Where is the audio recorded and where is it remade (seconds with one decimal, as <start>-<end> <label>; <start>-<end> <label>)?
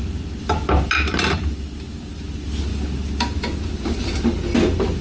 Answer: 0.0-5.0 recorded